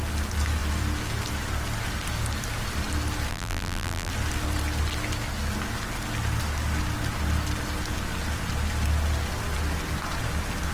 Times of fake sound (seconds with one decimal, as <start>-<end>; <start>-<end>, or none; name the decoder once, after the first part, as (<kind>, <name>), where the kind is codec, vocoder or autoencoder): 3.3-4.1 (vocoder, BigVGAN v2)